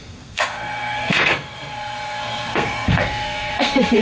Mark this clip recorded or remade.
remade